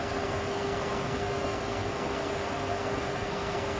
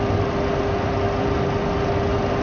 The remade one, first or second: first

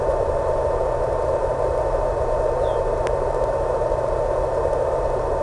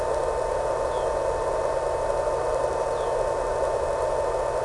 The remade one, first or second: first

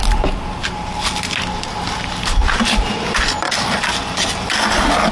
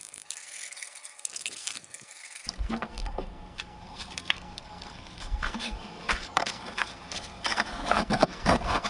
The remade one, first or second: second